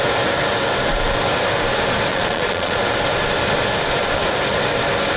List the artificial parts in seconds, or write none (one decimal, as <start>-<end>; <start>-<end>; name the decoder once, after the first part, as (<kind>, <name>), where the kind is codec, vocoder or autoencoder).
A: 2.1-2.8 (vocoder, Vocos)